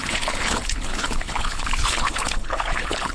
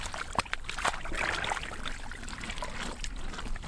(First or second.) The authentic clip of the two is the second